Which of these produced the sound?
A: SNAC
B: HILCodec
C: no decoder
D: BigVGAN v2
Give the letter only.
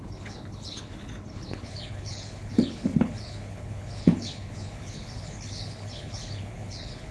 B